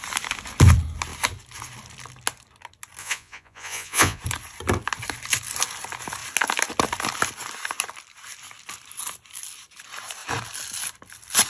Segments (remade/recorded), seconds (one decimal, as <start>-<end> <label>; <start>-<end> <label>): 0.0-3.0 recorded; 3.0-4.2 remade; 4.2-11.5 recorded